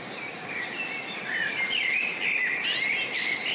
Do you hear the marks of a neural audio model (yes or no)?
no